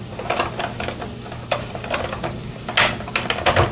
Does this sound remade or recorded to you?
recorded